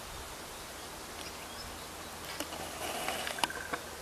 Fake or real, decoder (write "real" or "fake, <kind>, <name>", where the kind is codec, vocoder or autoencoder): real